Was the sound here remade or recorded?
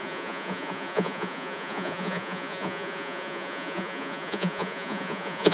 remade